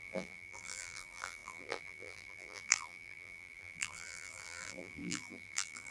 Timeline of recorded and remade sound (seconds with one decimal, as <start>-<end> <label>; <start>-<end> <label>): 0.0-5.9 remade